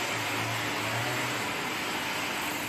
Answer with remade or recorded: recorded